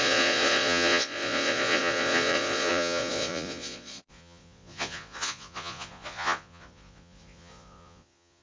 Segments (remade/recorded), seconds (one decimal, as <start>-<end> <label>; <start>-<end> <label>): 0.0-8.4 remade